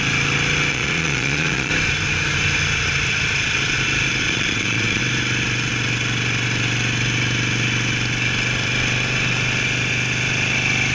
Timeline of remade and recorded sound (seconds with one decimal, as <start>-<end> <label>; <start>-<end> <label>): 0.0-0.7 recorded; 0.7-1.7 remade; 1.7-4.2 recorded; 4.2-5.0 remade; 5.0-10.9 recorded